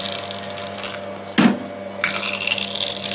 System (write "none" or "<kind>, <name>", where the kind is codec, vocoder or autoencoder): none